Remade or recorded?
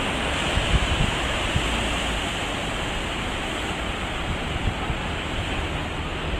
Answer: recorded